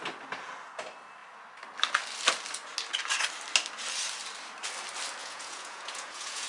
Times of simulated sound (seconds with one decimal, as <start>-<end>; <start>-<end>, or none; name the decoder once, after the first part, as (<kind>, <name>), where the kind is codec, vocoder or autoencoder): 5.2-6.5 (vocoder, Vocos)